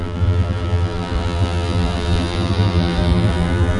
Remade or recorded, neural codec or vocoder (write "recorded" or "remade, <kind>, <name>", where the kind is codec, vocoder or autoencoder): remade, vocoder, BigVGAN v2